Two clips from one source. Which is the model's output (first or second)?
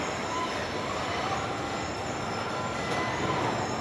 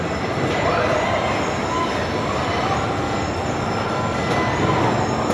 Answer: first